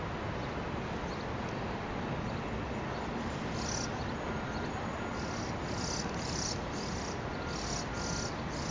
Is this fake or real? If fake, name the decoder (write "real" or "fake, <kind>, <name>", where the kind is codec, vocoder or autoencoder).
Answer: real